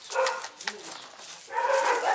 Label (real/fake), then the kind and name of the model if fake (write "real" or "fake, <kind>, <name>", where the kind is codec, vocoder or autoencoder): real